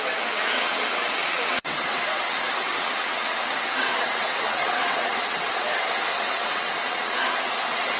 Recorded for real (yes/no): no